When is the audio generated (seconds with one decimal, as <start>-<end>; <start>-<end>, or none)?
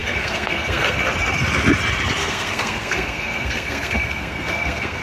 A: 0.0-1.0; 2.2-5.0